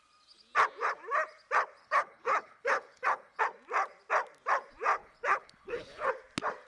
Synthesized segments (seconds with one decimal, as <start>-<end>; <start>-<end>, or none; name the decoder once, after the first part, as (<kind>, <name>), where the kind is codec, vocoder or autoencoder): 1.8-3.4 (codec, HILCodec); 5.0-6.1